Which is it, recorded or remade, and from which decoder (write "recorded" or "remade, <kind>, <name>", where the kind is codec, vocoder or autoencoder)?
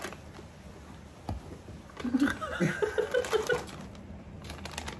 recorded